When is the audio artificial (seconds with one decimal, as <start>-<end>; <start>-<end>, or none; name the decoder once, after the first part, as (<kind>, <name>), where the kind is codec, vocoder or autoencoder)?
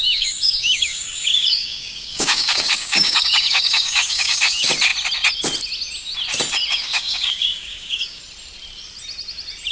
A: 0.0-4.7 (codec, DAC); 6.7-8.2